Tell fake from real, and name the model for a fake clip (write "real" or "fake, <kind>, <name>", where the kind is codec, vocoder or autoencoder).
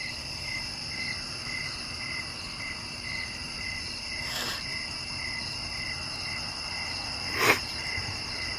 fake, vocoder, BigVGAN v2